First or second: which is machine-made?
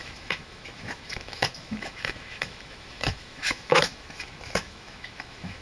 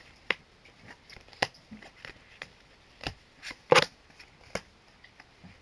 first